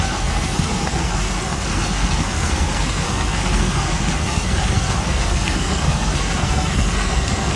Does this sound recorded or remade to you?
remade